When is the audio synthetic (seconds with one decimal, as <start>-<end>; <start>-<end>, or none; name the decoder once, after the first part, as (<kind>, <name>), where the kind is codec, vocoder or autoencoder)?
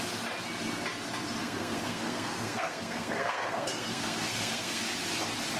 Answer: 1.4-4.8 (codec, SNAC)